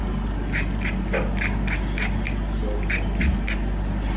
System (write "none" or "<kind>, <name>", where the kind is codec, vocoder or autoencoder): none